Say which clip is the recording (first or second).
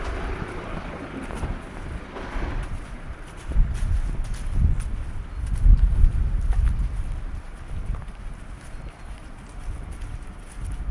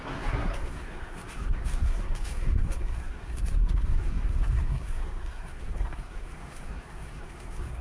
first